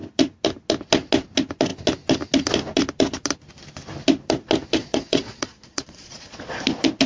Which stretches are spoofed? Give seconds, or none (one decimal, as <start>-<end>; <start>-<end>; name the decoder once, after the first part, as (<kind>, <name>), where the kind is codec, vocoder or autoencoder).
4.8-6.6 (vocoder, Vocos)